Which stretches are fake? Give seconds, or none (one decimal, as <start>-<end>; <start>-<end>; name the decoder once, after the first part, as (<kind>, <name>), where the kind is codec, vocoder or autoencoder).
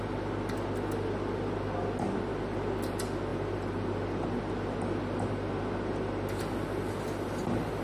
3.3-4.4 (vocoder, BigVGAN v2)